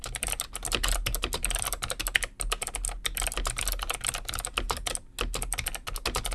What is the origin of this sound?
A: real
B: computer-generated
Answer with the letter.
A